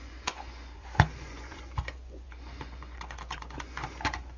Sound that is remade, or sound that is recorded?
remade